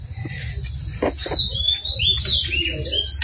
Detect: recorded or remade recorded